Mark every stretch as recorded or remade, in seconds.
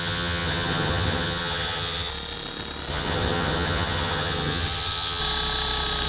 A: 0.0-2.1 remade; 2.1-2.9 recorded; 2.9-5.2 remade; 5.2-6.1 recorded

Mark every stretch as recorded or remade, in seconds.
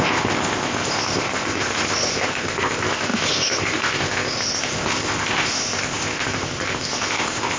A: 0.0-7.6 remade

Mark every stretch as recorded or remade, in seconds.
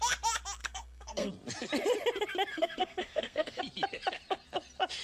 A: 0.0-0.6 recorded; 0.6-1.3 remade; 1.3-2.5 recorded; 2.5-3.6 remade; 3.6-5.0 recorded